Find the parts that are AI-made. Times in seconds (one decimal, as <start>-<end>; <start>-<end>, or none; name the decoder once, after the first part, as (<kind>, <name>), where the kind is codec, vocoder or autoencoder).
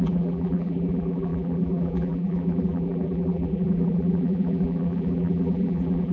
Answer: 0.0-6.1 (vocoder, BigVGAN v2)